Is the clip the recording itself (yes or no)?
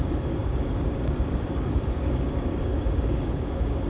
no